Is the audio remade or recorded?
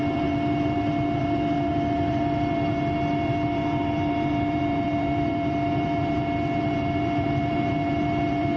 remade